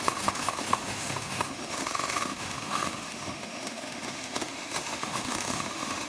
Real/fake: fake